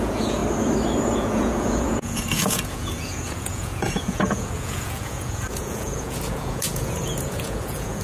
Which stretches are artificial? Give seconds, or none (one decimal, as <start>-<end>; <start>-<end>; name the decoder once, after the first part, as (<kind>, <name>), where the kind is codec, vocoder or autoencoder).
0.0-0.4 (vocoder, Vocos); 1.0-8.0